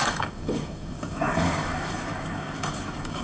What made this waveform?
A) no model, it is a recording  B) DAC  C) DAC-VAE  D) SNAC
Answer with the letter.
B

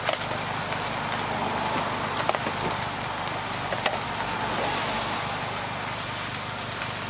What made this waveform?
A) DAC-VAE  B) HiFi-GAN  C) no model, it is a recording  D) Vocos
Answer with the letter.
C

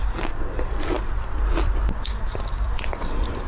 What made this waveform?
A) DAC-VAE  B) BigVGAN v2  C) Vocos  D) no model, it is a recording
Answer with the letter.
B